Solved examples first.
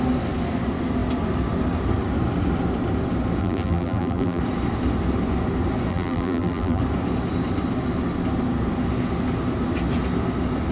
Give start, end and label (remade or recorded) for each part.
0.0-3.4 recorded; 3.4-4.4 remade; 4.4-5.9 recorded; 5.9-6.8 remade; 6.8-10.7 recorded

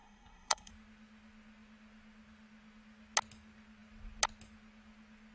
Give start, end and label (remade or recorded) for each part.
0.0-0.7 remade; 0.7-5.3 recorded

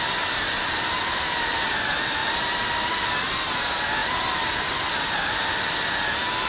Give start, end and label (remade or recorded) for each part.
0.0-6.5 recorded

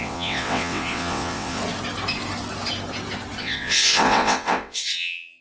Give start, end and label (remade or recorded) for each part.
0.0-1.6 remade; 1.6-3.4 recorded; 3.4-5.4 remade